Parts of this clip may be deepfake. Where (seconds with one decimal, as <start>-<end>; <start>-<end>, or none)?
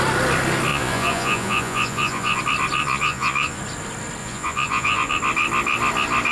0.7-2.4; 2.8-3.6; 4.2-5.1